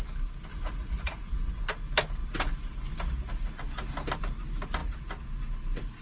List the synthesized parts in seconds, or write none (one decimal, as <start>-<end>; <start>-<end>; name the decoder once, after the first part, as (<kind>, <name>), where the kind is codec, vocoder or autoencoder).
0.5-1.6 (vocoder, Vocos)